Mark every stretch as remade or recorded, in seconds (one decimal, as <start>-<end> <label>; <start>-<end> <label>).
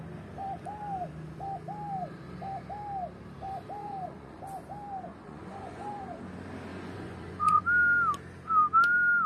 0.0-3.8 recorded; 3.8-4.4 remade; 4.4-5.1 recorded; 5.1-6.0 remade; 6.0-6.7 recorded; 6.7-7.6 remade; 7.6-9.3 recorded